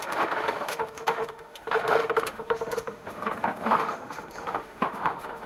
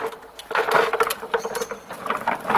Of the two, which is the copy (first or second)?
first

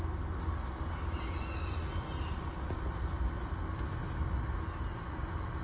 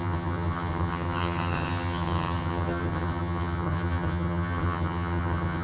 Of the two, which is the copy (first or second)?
second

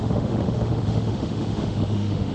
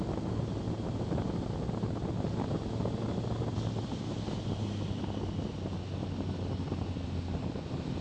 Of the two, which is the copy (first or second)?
first